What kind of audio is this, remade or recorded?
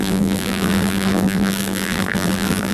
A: remade